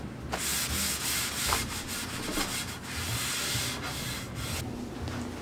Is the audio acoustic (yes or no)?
yes